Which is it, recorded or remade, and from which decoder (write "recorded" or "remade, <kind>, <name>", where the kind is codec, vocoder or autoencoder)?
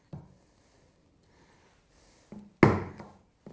recorded